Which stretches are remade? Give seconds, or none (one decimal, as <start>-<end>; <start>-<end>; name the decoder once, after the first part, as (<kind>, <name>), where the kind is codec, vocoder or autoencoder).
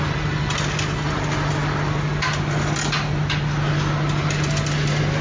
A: none